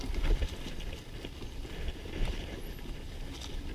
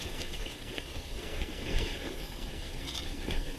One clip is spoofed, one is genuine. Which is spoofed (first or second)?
second